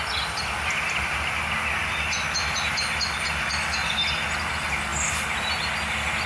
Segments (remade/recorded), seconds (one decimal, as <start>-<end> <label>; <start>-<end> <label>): 0.0-6.3 recorded